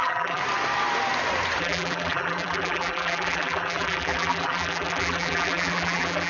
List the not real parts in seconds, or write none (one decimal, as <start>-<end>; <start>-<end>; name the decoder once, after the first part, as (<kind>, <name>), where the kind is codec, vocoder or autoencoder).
0.0-0.4 (vocoder, BigVGAN v2); 1.6-6.3